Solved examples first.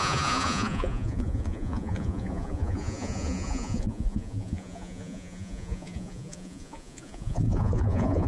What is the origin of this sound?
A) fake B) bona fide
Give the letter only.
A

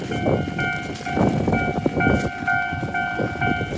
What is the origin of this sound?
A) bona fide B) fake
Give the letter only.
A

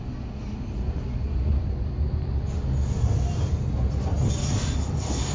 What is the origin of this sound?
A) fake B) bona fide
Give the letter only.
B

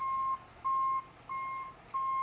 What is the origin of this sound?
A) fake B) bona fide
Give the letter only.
B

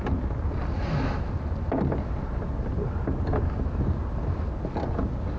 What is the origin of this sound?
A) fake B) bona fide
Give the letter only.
B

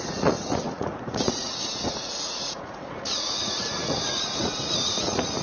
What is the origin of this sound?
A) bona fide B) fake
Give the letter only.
B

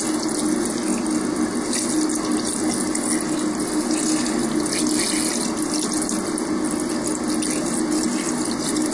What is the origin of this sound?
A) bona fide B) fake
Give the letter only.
A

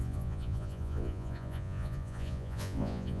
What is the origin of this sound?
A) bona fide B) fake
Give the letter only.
B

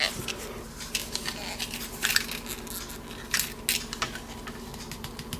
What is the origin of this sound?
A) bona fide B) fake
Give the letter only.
A